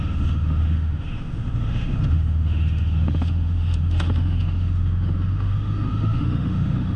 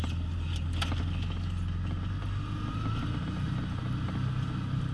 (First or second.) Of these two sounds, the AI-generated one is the first